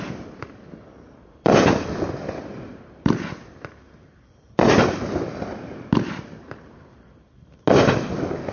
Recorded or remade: recorded